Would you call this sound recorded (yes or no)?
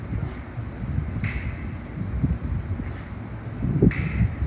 yes